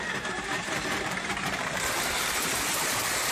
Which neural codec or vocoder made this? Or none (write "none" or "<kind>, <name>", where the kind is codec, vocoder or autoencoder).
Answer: vocoder, BigVGAN v2